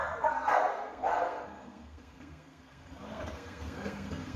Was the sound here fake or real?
fake